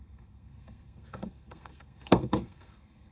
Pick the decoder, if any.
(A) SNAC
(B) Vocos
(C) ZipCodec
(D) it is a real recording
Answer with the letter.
A